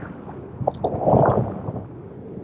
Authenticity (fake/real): real